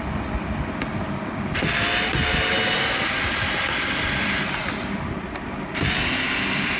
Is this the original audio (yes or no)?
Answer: yes